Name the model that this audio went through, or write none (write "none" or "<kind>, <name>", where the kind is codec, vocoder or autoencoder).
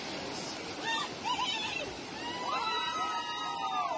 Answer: none